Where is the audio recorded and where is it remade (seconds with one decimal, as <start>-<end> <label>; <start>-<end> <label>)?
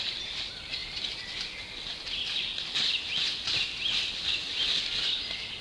0.0-0.8 recorded; 0.8-3.0 remade; 3.0-5.6 recorded